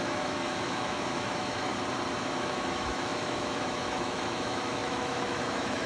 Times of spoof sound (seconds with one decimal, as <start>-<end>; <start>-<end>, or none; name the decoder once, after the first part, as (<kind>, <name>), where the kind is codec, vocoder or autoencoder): 0.0-1.7 (autoencoder, DAC-VAE); 2.2-5.9